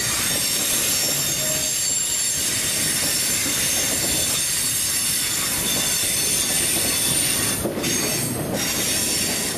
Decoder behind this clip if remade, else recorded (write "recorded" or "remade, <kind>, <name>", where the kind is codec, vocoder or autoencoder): recorded